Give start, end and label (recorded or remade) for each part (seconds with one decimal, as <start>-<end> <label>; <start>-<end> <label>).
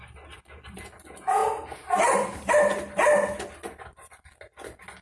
0.0-5.0 recorded